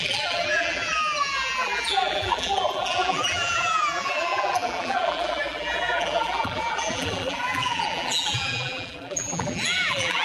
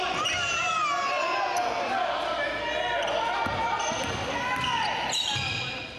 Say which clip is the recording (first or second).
second